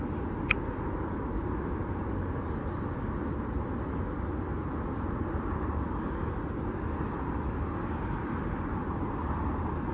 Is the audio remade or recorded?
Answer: recorded